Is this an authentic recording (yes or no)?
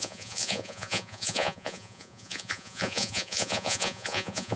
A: no